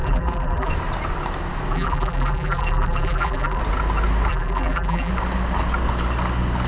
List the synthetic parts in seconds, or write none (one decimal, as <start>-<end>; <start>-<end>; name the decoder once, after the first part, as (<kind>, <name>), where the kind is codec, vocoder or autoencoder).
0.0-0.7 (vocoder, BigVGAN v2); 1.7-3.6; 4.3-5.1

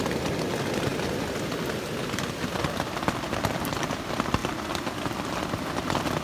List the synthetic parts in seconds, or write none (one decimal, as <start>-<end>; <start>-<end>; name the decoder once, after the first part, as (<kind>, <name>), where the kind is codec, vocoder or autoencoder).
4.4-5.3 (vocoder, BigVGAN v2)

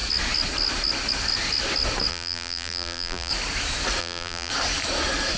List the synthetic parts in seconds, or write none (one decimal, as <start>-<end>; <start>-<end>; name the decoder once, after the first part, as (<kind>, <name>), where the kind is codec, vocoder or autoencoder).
2.1-3.3 (vocoder, BigVGAN v2); 4.0-4.5

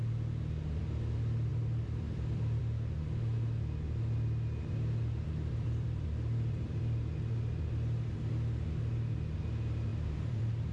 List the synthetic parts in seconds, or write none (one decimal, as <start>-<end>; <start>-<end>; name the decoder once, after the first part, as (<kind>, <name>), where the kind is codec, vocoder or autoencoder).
1.5-2.6 (vocoder, BigVGAN v2); 5.5-6.8; 9.9-10.7

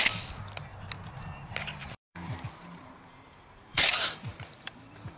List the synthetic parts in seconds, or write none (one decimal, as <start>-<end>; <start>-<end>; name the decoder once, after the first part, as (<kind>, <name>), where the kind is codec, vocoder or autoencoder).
1.8-5.2 (vocoder, BigVGAN v2)

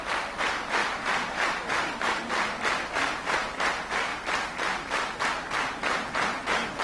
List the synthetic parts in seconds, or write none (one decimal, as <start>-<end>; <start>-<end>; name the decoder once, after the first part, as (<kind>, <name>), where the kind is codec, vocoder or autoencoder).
0.8-2.2 (vocoder, BigVGAN v2)

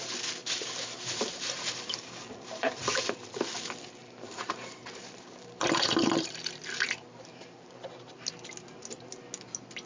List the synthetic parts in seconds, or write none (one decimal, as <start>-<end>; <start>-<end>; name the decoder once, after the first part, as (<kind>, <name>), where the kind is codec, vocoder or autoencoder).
0.4-3.1 (vocoder, BigVGAN v2); 4.0-8.3

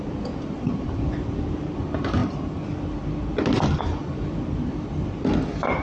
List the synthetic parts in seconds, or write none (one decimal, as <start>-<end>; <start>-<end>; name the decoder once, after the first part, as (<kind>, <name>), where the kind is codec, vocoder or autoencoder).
none